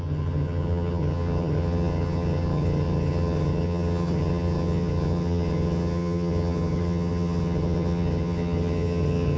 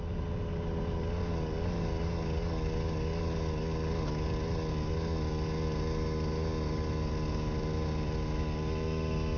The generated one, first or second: first